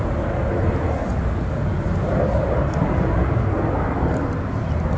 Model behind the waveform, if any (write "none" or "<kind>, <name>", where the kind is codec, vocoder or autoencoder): none